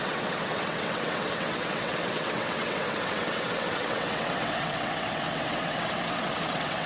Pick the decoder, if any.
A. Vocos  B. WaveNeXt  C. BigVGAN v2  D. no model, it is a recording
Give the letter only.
B